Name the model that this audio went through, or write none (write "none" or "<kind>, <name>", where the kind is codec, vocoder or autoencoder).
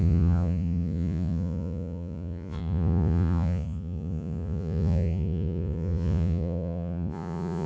vocoder, Vocos